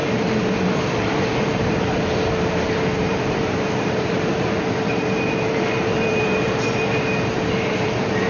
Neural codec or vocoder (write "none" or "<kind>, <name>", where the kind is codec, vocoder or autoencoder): vocoder, BigVGAN v2